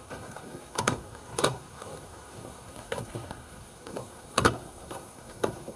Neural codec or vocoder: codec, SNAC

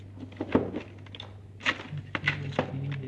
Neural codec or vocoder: none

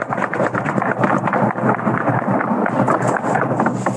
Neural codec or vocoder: none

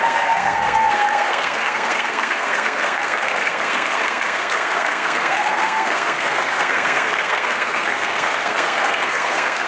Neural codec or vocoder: codec, SNAC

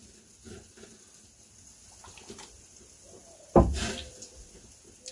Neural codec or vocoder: none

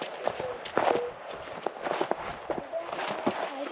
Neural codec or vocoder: none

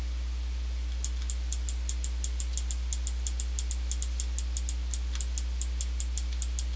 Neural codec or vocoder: none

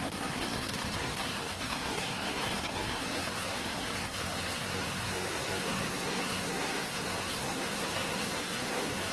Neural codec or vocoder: codec, SNAC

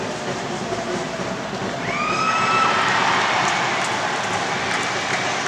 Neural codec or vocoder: none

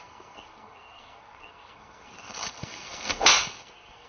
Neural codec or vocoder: codec, SNAC